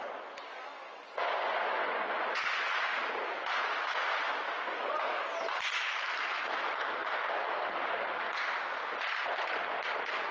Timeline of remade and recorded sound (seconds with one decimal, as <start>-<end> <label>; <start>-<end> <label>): 0.0-0.7 recorded; 0.7-2.8 remade; 2.8-10.3 recorded